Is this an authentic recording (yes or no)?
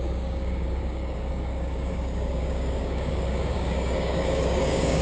no